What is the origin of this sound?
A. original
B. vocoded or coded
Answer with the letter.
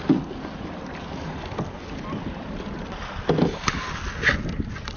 A